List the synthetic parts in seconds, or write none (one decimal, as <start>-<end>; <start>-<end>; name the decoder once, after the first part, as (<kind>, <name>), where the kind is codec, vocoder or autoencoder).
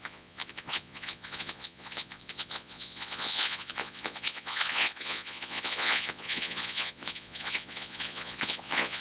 0.0-9.0 (vocoder, Vocos)